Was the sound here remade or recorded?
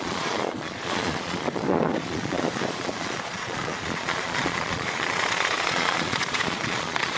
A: remade